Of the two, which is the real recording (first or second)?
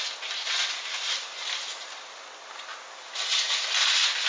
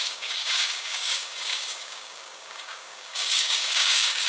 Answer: first